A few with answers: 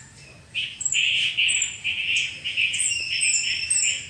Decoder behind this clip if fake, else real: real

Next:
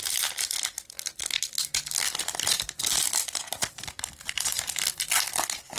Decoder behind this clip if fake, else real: real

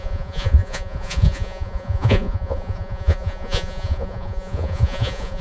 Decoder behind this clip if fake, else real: fake, vocoder, Vocos